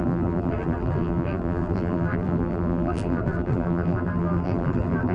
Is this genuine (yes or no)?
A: no